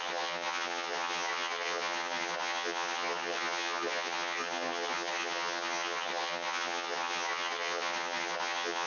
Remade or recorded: remade